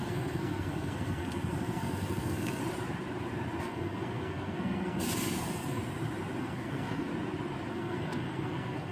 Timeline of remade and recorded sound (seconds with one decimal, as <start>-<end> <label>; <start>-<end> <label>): 0.0-2.6 remade; 2.6-3.6 recorded; 3.6-5.8 remade; 5.8-6.4 recorded; 6.4-7.1 remade; 7.1-7.7 recorded; 7.7-8.9 remade